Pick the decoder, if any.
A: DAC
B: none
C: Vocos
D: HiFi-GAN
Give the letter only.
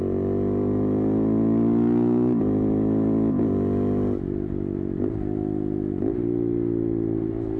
B